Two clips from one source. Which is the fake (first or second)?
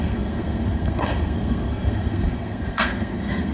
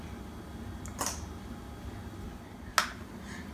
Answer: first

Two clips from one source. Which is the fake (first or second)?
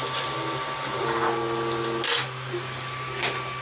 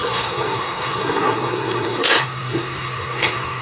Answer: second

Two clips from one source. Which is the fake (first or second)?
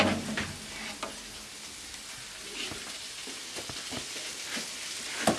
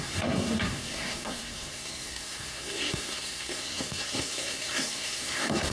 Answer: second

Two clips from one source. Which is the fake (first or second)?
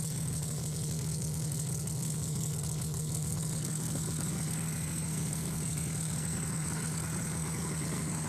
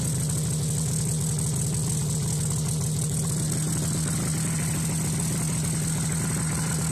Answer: first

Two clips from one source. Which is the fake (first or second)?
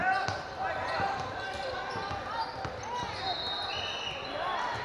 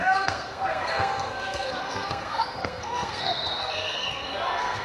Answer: second